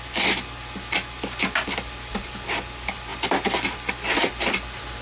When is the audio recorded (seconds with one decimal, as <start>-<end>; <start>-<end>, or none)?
0.0-5.0